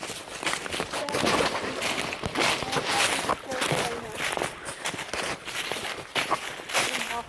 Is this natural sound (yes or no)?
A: yes